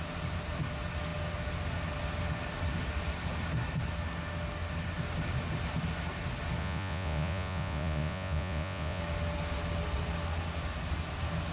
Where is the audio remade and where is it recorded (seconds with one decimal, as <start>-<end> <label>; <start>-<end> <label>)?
0.0-6.6 recorded; 6.6-9.0 remade; 9.0-11.5 recorded